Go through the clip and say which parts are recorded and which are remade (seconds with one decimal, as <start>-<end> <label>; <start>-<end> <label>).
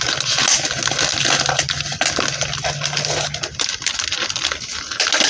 0.0-5.3 recorded